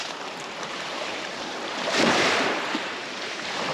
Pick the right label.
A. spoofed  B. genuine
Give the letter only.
A